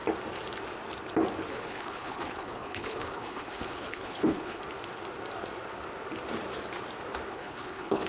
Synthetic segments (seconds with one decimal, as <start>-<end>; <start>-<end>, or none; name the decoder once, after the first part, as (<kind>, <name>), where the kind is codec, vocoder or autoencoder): 1.5-4.6 (codec, HILCodec); 7.3-8.1